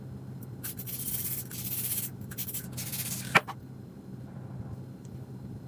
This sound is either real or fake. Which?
real